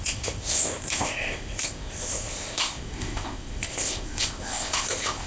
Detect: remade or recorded remade